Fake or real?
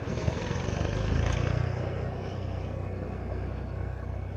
fake